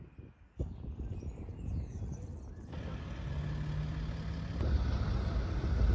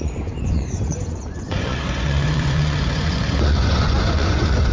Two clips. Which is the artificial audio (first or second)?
second